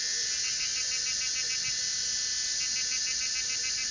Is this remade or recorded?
recorded